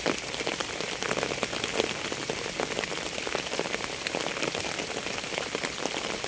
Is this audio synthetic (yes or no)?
no